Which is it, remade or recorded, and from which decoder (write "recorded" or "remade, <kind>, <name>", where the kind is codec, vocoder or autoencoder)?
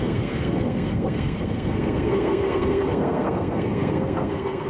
remade, codec, SNAC